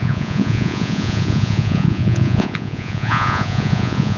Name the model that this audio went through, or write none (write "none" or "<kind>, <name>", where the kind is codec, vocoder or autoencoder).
vocoder, Vocos